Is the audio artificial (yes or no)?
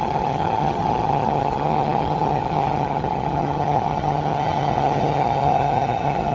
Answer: yes